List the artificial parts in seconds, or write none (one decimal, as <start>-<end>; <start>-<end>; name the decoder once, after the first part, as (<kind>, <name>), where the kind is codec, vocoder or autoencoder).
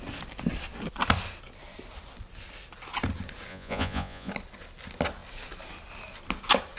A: 3.5-4.3 (vocoder, Vocos)